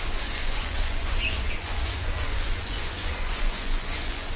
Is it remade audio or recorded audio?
remade